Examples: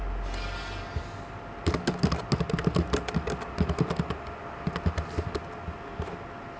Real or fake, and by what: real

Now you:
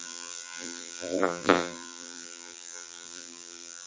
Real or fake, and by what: fake, vocoder, BigVGAN v2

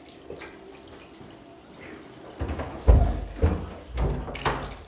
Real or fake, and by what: real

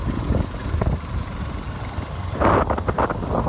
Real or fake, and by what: real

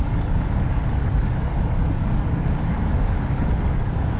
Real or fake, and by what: fake, codec, DAC